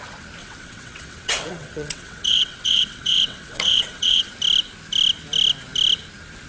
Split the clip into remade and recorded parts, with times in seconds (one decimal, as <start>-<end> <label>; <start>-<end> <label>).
0.0-0.4 recorded; 0.4-4.3 remade; 4.3-6.5 recorded